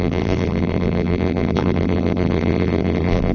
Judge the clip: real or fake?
fake